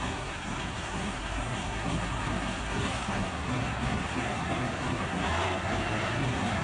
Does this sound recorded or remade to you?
remade